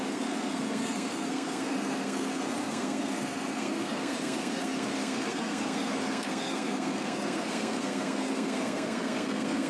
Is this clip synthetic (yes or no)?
yes